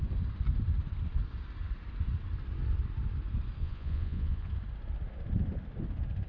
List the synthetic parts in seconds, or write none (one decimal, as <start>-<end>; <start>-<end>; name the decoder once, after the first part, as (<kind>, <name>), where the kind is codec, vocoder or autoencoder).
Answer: 3.6-4.5 (vocoder, Vocos)